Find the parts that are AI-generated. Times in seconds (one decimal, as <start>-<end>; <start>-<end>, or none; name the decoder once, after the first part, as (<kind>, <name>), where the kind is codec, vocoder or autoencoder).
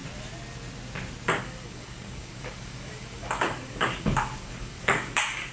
1.4-5.5 (codec, DAC)